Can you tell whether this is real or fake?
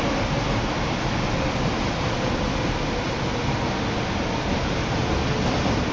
real